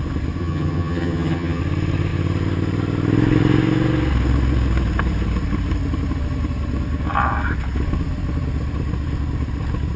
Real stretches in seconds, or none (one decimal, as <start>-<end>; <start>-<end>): 0.0-0.4; 1.6-10.0